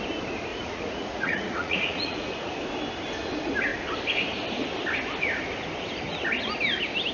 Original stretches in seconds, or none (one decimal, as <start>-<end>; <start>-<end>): 0.0-0.5; 2.5-7.1